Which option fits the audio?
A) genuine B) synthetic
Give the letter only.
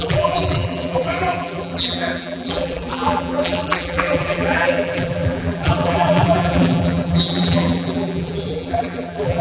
B